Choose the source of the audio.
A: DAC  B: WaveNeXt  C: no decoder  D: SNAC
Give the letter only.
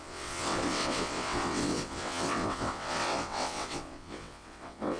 B